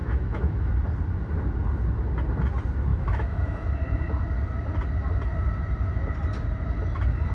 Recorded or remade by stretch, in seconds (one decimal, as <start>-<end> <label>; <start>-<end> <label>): 0.0-0.7 remade; 0.7-2.9 recorded; 2.9-3.7 remade; 3.7-7.3 recorded